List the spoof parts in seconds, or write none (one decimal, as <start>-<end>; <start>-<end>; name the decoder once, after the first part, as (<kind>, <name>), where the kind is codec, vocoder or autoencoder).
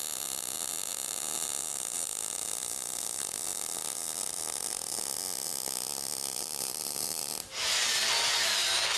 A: 6.3-7.3 (vocoder, BigVGAN v2)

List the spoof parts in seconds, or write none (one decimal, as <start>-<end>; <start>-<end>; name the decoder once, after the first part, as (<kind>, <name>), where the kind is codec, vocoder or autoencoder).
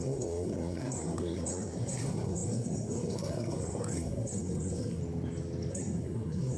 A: 0.0-5.0 (codec, SNAC); 5.7-6.6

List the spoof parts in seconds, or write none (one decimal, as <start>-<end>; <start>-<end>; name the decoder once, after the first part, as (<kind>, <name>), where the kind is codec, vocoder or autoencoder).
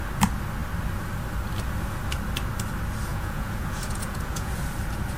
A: 3.1-4.5 (vocoder, Vocos)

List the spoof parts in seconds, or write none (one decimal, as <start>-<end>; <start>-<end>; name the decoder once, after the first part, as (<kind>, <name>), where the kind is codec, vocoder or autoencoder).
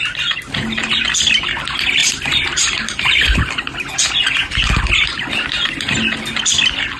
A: none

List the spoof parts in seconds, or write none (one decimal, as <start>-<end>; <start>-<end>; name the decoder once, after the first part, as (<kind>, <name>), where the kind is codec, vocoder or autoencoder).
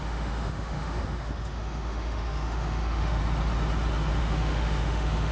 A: 0.0-3.2 (autoencoder, DAC-VAE); 4.2-5.3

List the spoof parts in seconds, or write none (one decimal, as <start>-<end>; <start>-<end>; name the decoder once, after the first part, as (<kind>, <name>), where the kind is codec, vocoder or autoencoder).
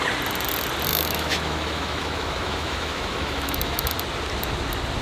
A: 0.9-3.9 (autoencoder, DAC-VAE)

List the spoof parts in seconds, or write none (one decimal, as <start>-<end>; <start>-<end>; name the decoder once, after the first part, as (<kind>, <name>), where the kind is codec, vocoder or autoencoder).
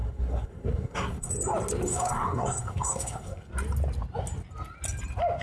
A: 0.0-1.3 (codec, SNAC); 1.9-3.5